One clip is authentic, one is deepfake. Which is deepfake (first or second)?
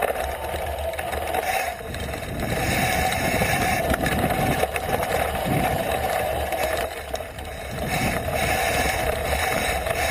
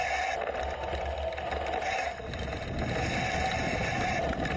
first